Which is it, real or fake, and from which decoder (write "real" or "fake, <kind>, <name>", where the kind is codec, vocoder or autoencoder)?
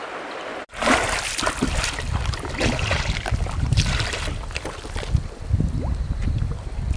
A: real